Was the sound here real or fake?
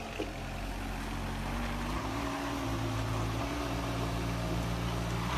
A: real